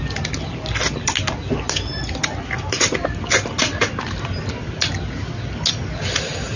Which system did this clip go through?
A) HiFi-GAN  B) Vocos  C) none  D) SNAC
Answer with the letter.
C